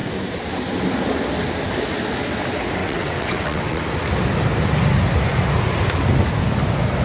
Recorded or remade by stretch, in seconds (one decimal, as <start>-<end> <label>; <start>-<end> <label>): 0.0-2.8 recorded; 2.8-3.8 remade; 3.8-7.0 recorded